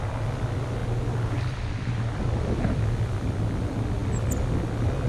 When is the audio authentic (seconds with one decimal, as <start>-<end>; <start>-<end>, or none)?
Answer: 0.0-5.1